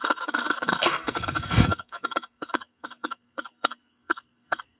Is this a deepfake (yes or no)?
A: yes